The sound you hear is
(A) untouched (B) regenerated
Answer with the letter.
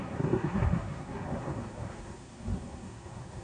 B